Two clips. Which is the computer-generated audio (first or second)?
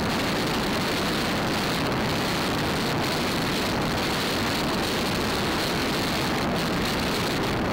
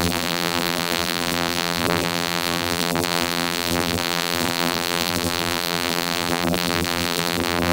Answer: second